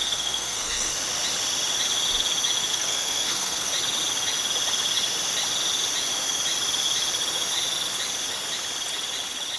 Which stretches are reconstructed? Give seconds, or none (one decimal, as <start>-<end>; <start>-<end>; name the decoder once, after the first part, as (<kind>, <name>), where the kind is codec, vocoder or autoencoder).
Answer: 0.0-0.9 (codec, SNAC); 2.7-3.7